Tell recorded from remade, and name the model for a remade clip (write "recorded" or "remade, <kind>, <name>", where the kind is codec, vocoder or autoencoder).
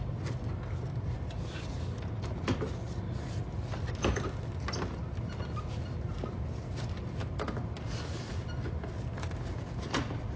recorded